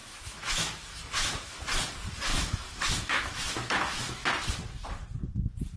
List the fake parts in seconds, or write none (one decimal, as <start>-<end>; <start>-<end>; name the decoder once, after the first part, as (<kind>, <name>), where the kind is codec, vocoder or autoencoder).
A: 0.0-1.6 (autoencoder, DAC-VAE); 2.3-4.3